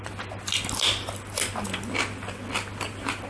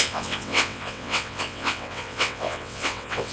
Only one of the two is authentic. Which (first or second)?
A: first